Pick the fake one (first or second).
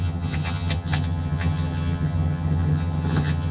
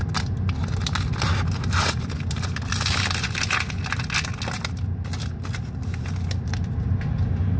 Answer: first